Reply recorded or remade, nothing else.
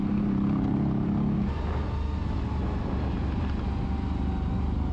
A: recorded